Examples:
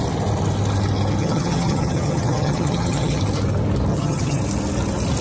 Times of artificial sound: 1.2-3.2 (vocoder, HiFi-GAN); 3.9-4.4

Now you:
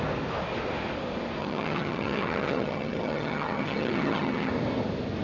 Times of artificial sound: 1.4-4.5 (vocoder, HiFi-GAN)

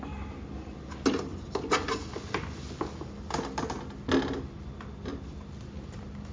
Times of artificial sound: none

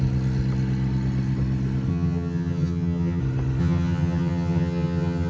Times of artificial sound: 1.9-3.2 (vocoder, HiFi-GAN); 3.6-5.3

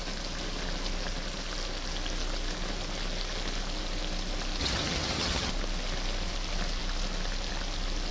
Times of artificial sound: 4.6-5.5 (vocoder, HiFi-GAN)

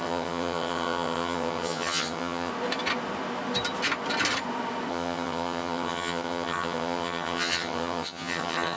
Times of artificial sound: 0.0-2.5 (vocoder, HiFi-GAN); 4.9-8.8